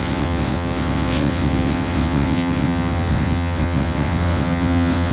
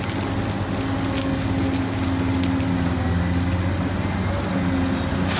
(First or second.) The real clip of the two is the second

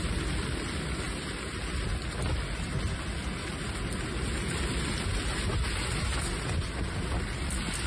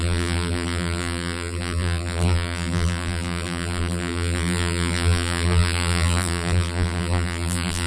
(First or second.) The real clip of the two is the first